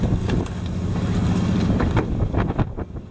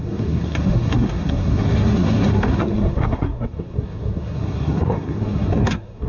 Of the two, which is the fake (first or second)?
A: second